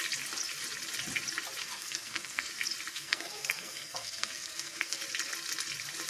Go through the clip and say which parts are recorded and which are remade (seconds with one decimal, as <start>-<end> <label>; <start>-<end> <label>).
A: 0.0-1.6 recorded; 1.6-2.5 remade; 2.5-2.9 recorded; 2.9-5.0 remade; 5.0-6.1 recorded